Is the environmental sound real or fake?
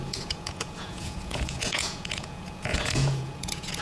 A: fake